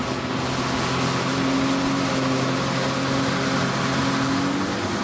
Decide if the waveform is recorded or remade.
recorded